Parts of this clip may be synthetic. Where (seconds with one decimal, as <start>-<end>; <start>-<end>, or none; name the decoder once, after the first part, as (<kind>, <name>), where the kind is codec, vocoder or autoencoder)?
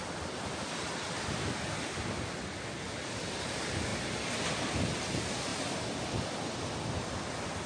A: none